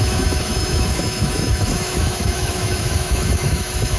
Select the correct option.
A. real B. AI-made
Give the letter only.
B